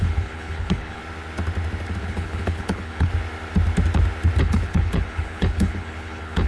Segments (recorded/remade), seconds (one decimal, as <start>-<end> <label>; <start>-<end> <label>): 0.0-1.0 remade; 1.0-2.0 recorded; 2.0-3.1 remade; 3.1-4.4 recorded; 4.4-6.5 remade